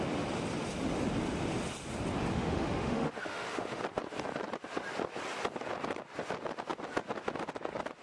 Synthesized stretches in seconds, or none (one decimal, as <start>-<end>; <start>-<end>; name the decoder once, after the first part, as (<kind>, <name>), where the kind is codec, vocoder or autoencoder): 2.3-3.8 (autoencoder, DAC-VAE)